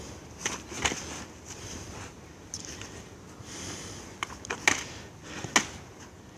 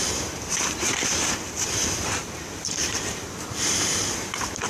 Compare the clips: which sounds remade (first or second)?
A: second